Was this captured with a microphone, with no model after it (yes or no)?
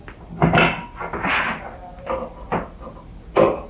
yes